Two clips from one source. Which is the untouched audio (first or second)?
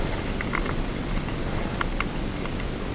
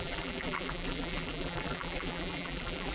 first